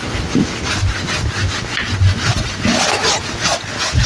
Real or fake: real